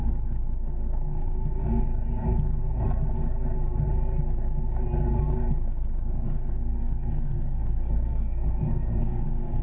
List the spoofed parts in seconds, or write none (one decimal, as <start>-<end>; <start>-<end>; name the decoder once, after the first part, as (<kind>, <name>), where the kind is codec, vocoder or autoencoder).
0.0-1.8 (codec, SNAC); 5.7-9.6